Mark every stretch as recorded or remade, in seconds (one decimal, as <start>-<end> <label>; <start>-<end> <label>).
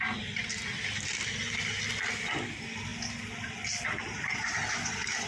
0.0-5.3 recorded